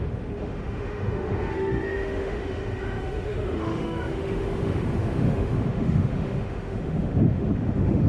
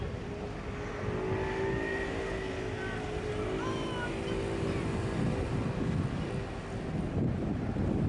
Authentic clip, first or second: second